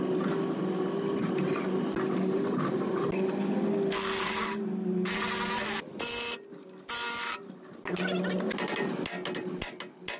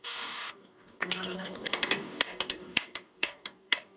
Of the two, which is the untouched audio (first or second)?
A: first